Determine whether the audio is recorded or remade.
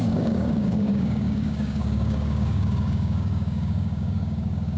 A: remade